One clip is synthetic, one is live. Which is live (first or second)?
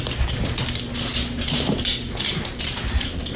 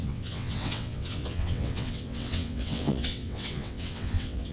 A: first